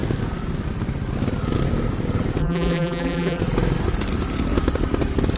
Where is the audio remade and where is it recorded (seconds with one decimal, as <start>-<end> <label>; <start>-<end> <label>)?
0.0-2.4 recorded; 2.4-3.4 remade; 3.4-5.4 recorded